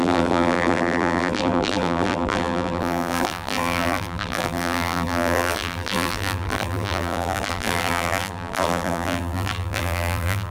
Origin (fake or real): fake